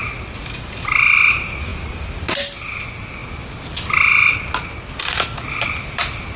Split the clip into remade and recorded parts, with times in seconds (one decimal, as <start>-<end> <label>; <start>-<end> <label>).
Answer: 0.0-6.4 recorded